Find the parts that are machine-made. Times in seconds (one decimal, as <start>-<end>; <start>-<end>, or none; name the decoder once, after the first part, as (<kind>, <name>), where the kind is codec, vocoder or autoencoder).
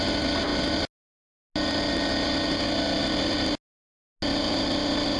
none